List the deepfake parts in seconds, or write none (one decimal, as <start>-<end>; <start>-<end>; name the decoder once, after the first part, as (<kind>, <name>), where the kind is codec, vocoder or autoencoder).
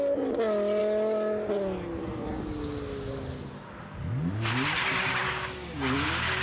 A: 5.2-6.4 (codec, DAC)